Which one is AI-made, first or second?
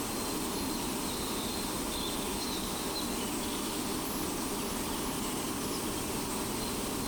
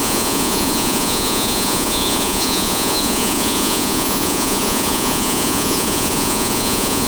second